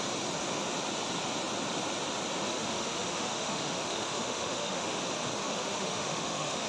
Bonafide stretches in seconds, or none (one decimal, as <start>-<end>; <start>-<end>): 0.0-2.5; 5.0-5.4